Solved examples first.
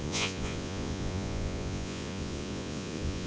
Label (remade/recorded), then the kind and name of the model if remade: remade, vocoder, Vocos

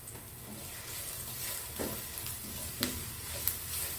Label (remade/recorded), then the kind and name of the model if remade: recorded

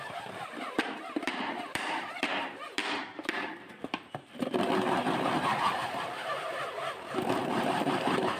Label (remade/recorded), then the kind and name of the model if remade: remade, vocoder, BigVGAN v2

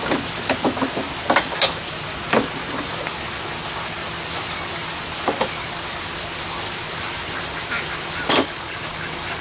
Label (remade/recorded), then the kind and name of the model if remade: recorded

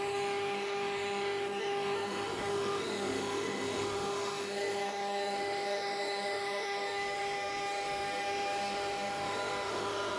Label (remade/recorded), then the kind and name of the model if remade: remade, autoencoder, DAC-VAE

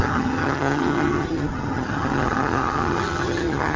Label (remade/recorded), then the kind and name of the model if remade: remade, vocoder, HiFi-GAN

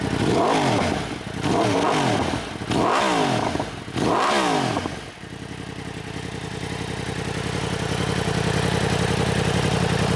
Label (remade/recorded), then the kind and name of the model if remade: recorded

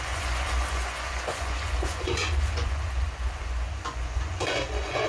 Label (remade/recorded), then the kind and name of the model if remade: remade, vocoder, Vocos